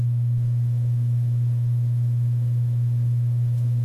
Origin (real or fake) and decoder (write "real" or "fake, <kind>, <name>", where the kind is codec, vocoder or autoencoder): fake, autoencoder, DAC-VAE